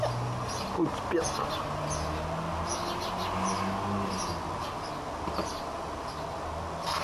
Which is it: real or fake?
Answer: real